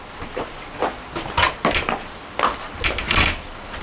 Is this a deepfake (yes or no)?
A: no